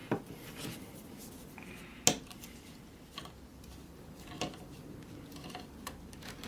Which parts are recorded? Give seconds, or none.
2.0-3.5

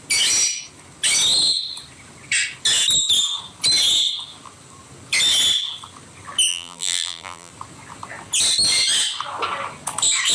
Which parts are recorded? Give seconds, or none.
0.0-6.5; 7.5-10.3

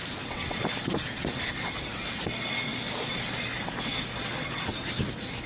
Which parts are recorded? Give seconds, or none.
0.6-5.5

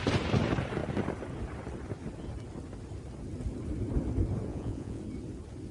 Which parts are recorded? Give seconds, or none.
0.0-4.5; 5.0-5.7